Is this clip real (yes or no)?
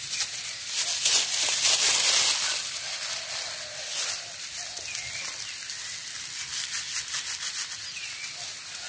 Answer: yes